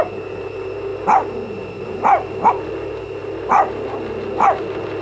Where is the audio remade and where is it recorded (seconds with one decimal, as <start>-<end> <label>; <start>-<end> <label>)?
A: 0.0-0.9 recorded; 0.9-2.7 remade; 2.7-3.2 recorded; 3.2-3.9 remade; 3.9-5.0 recorded